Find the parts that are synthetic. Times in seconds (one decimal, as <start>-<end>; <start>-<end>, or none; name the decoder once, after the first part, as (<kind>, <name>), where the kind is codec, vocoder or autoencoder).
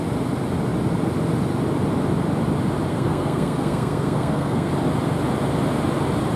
2.9-4.7 (codec, SNAC)